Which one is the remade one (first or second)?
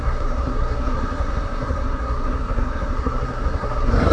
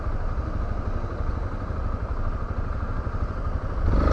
first